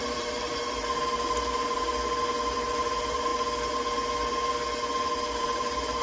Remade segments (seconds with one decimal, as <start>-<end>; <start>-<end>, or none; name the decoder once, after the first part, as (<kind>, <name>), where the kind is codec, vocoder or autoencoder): 0.0-0.9 (vocoder, BigVGAN v2); 2.7-3.3; 5.4-6.0